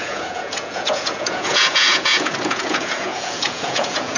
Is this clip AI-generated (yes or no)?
yes